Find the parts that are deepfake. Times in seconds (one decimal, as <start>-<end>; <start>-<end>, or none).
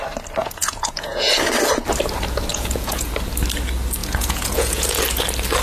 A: 0.4-1.3; 2.5-3.1; 4.0-5.0